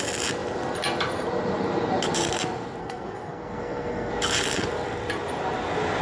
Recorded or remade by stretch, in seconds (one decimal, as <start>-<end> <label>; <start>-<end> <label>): 0.0-2.8 recorded; 2.8-4.1 remade; 4.1-6.0 recorded